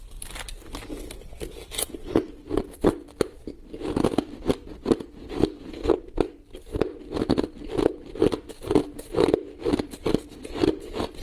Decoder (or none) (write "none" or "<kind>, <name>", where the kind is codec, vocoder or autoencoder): none